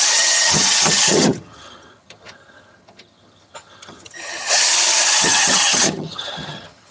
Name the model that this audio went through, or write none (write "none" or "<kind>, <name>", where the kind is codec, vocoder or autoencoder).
vocoder, HiFi-GAN